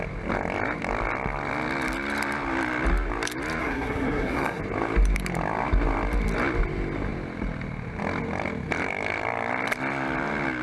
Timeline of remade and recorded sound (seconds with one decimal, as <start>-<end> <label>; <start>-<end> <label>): 0.0-3.6 recorded; 3.6-4.6 remade; 4.6-10.6 recorded